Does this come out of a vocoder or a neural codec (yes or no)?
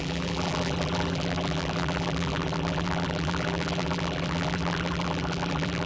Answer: yes